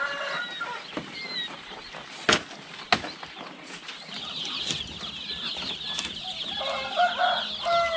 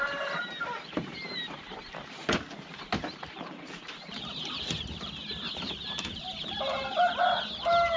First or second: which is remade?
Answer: second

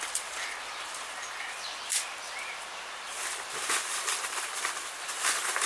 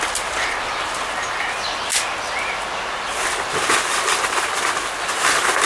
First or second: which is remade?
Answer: first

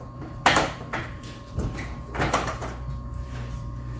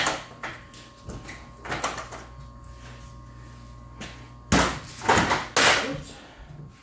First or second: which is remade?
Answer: first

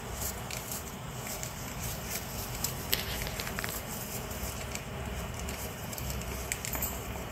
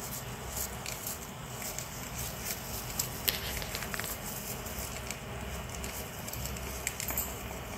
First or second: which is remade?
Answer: first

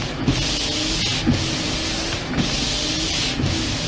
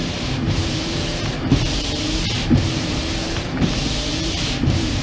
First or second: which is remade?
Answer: second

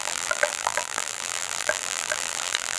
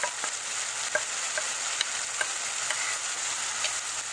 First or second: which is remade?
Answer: first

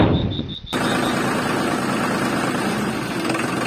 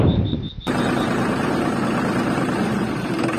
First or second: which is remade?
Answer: second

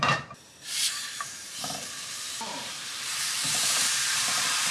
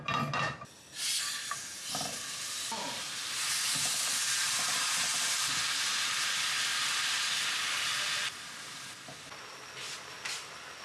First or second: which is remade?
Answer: first